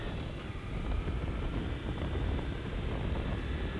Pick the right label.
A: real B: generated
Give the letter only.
A